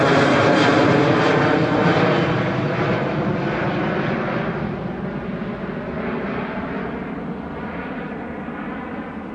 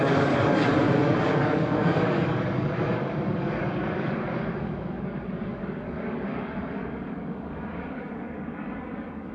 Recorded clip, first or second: first